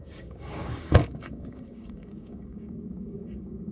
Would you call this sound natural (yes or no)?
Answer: no